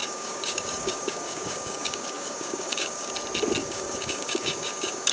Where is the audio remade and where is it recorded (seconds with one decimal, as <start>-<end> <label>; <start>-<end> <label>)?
0.0-3.1 remade; 3.1-3.6 recorded; 3.6-5.1 remade